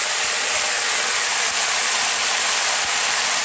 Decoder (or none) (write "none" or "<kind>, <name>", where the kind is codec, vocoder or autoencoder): none